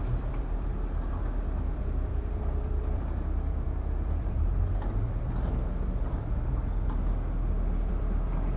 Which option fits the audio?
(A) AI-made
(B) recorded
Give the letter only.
A